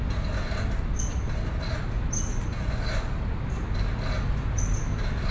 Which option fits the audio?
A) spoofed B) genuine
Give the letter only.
B